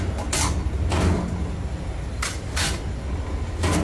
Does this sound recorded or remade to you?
recorded